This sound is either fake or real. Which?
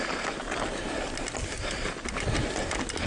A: real